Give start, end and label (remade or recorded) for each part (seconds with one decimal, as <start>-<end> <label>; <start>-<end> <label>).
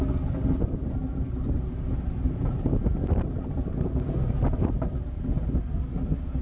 0.0-6.4 recorded